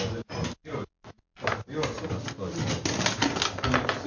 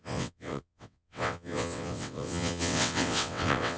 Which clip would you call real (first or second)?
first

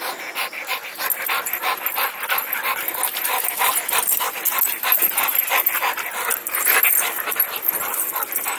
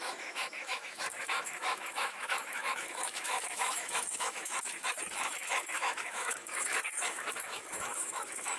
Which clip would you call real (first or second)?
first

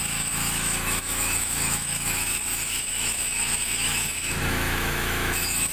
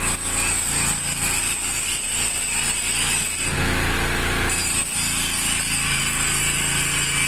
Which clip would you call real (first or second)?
second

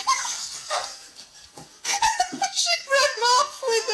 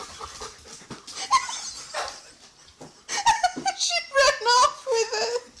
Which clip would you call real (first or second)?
second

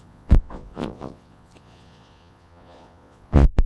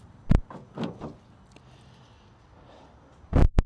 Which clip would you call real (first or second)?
second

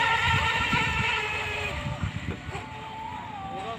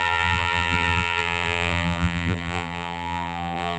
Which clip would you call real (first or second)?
first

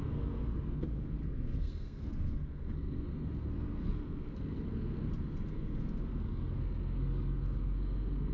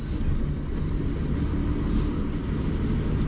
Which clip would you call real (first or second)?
second